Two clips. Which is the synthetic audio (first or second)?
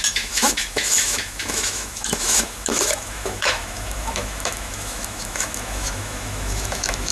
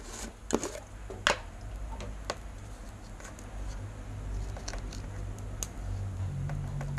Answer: first